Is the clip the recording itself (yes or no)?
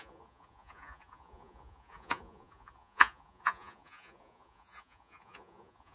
no